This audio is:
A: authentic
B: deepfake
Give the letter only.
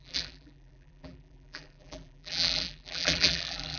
B